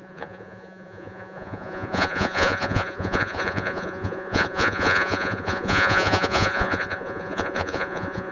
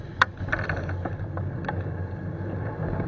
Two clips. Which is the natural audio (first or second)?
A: second